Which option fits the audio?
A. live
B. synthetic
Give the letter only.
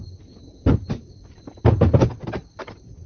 A